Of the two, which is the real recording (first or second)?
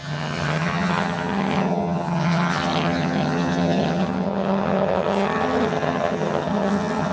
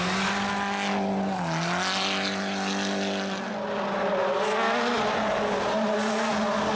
second